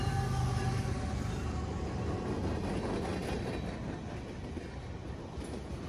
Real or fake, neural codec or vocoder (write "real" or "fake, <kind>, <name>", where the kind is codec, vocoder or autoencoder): real